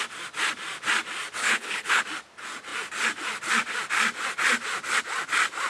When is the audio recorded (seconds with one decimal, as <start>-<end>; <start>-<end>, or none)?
0.0-1.4; 2.0-5.7